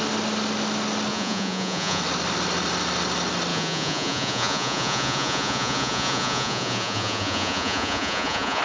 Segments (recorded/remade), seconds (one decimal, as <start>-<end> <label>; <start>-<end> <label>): 0.0-1.1 recorded; 1.1-2.0 remade; 2.0-3.5 recorded; 3.5-8.6 remade